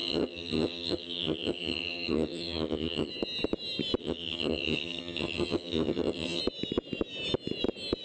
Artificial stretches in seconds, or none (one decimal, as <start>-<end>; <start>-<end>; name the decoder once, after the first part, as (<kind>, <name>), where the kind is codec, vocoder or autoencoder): 0.0-3.1 (vocoder, HiFi-GAN); 4.0-6.4